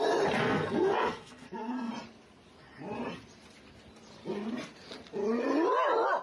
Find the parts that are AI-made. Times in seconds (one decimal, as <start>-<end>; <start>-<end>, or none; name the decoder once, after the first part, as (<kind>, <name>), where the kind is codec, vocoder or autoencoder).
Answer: 0.4-1.9 (codec, SNAC)